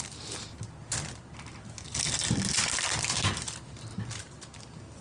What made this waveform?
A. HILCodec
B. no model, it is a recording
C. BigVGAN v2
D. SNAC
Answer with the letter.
B